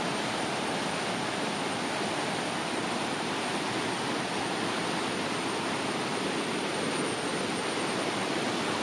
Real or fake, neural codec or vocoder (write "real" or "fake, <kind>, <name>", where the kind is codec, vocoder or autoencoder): real